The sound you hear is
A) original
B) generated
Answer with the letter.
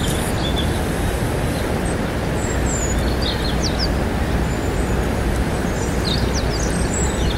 A